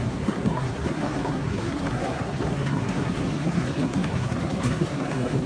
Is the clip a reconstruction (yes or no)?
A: yes